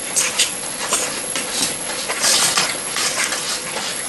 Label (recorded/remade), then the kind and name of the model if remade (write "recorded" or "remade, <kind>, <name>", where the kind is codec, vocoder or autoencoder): remade, vocoder, Vocos